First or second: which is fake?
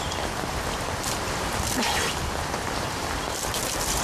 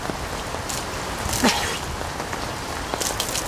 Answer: first